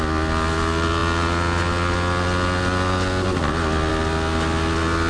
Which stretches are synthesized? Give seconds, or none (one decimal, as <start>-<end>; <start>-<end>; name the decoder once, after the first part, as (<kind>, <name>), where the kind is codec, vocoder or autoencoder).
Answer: none